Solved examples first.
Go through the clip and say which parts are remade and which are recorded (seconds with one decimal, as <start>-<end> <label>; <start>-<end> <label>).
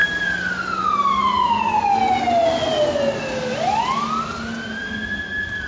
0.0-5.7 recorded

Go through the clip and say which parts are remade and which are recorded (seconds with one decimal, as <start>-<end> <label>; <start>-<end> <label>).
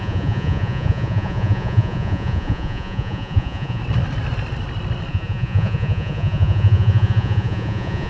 0.0-3.8 remade; 3.8-5.1 recorded; 5.1-8.1 remade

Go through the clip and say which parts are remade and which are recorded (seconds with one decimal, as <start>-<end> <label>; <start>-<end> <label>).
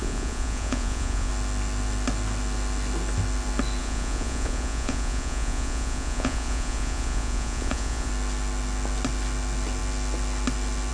0.0-1.3 remade; 1.3-3.8 recorded; 3.8-8.1 remade; 8.1-10.9 recorded